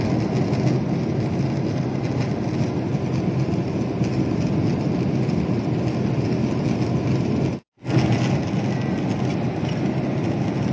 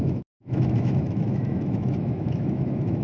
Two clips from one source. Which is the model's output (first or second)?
second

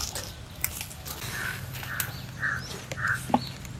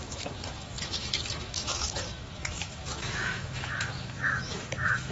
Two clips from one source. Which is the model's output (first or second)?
second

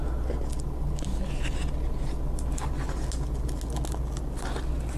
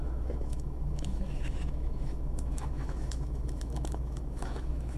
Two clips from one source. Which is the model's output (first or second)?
second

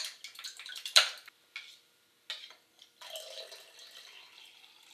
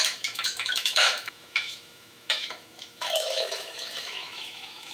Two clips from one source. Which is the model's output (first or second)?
second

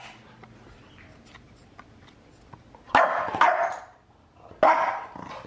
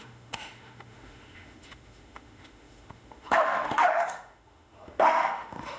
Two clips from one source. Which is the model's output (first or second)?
second